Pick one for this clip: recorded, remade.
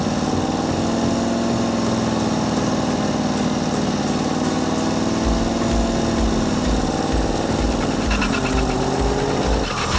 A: recorded